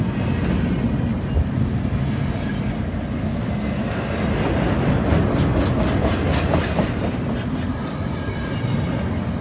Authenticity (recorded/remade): recorded